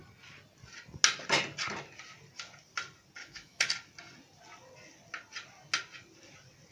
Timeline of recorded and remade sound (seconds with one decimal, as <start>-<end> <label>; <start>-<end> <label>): 0.0-3.2 recorded; 3.2-3.7 remade; 3.7-6.7 recorded